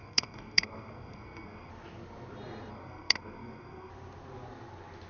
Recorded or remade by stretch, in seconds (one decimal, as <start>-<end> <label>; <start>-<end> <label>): 0.0-1.7 remade; 1.7-2.7 recorded; 2.7-3.9 remade; 3.9-5.1 recorded